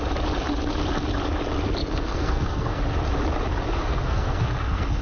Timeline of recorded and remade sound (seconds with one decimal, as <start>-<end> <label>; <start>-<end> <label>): 0.0-1.8 recorded; 1.8-2.8 remade; 2.8-3.8 recorded; 3.8-5.0 remade